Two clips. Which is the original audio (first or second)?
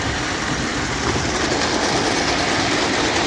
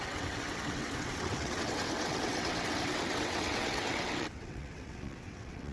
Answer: first